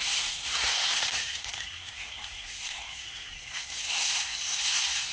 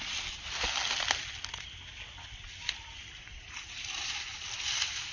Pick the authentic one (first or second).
second